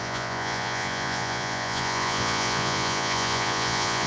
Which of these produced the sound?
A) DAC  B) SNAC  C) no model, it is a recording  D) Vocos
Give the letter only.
D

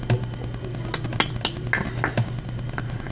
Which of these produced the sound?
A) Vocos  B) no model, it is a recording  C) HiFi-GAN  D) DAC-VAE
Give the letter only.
B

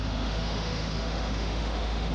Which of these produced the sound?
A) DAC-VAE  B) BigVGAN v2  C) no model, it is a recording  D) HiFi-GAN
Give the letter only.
A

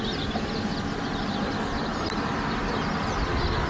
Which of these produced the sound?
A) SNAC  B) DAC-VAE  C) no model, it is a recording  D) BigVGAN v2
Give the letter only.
C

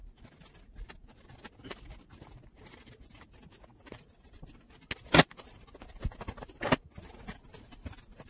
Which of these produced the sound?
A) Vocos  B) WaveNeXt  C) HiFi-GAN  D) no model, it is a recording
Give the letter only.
D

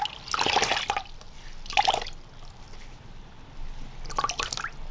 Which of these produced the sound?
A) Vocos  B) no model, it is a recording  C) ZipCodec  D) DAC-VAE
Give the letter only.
B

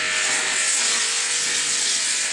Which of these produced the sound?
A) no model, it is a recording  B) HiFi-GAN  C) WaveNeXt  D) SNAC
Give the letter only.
A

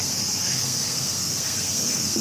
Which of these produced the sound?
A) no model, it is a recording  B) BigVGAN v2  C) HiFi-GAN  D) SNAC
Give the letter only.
D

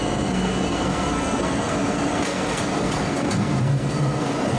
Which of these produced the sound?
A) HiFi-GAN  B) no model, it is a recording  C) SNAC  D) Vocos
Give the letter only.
C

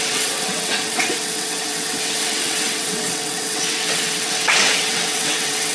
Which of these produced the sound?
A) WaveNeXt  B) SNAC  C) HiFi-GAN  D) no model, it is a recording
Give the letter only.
A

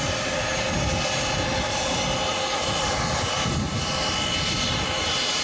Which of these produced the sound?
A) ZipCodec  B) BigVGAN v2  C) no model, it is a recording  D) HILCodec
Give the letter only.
C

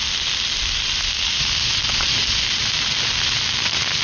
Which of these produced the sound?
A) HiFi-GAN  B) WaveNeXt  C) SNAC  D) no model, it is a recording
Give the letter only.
D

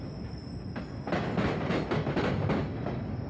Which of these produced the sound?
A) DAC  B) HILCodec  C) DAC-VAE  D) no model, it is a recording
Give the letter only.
D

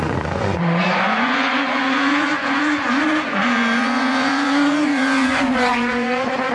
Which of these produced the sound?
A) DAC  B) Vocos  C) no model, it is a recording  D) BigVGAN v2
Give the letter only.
B